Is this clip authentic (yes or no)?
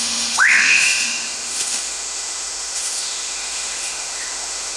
no